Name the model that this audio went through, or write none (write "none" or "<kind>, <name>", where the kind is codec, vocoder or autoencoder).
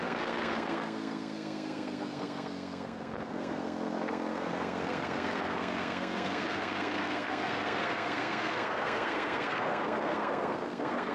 codec, SNAC